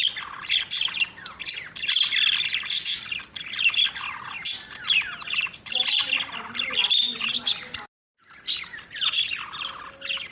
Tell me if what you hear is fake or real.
real